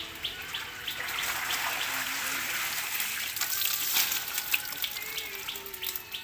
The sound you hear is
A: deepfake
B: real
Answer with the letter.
B